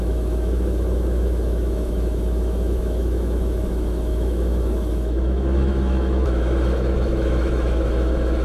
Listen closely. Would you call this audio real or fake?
fake